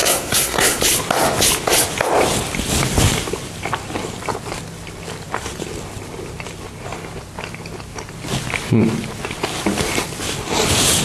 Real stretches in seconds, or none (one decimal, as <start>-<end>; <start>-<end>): 0.8-11.0